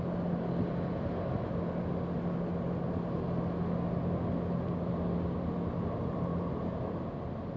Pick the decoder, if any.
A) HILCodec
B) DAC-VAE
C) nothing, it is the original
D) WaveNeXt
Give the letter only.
C